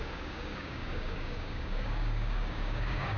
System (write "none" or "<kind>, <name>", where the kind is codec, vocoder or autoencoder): codec, DAC